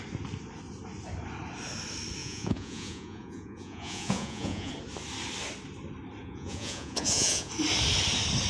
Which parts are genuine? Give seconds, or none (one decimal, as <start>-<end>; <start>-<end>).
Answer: 0.0-2.2; 4.7-6.2; 7.5-8.5